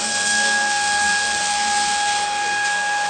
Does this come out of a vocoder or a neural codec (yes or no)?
yes